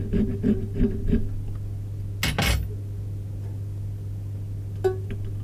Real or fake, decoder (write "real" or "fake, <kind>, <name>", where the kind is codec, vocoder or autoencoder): real